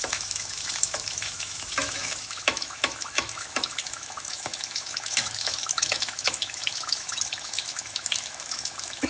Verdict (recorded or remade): remade